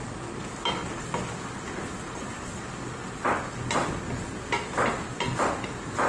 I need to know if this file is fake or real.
real